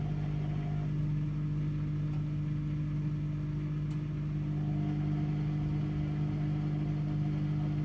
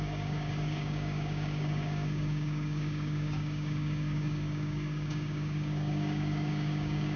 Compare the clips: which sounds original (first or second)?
first